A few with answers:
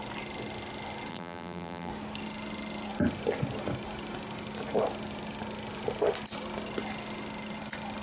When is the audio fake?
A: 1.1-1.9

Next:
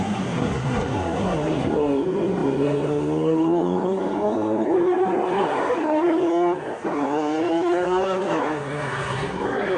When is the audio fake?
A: 0.0-9.8